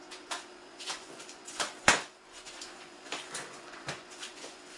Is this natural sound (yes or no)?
no